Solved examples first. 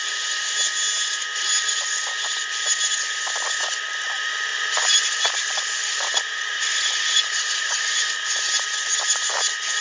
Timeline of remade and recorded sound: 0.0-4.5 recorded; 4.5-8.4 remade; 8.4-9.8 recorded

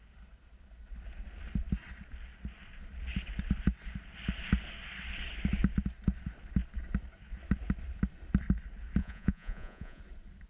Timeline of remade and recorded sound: 0.0-9.0 recorded; 9.0-10.0 remade; 10.0-10.5 recorded

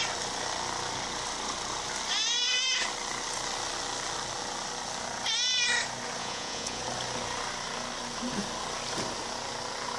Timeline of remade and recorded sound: 0.0-6.2 recorded; 6.2-6.8 remade; 6.8-10.0 recorded

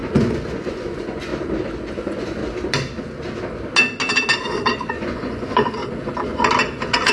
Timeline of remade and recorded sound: 0.0-1.3 remade; 1.3-1.9 recorded; 1.9-2.4 remade; 2.4-4.9 recorded; 4.9-5.8 remade; 5.8-7.1 recorded

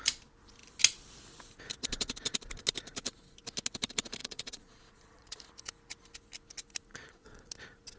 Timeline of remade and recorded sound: 0.0-4.2 recorded; 4.2-5.4 remade; 5.4-6.9 recorded; 6.9-7.5 remade; 7.5-8.0 recorded

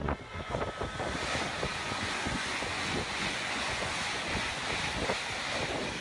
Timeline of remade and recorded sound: 0.0-0.6 remade; 0.6-1.7 recorded; 1.7-4.6 remade; 4.6-6.0 recorded

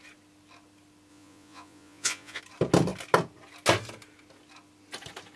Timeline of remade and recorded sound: 0.0-1.1 recorded; 1.1-2.4 remade; 2.4-5.4 recorded